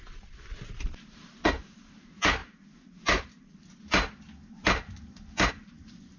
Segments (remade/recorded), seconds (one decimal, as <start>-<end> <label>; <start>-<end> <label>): 0.0-6.2 recorded